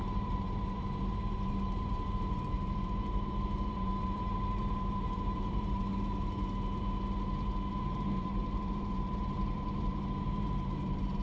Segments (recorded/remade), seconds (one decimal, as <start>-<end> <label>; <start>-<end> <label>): 0.0-5.9 remade; 5.9-7.7 recorded; 7.7-11.2 remade